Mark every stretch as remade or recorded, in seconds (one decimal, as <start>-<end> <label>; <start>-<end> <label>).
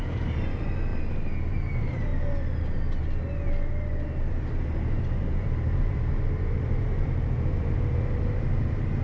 0.0-0.9 remade; 0.9-1.5 recorded; 1.5-2.1 remade; 2.1-4.3 recorded; 4.3-9.0 remade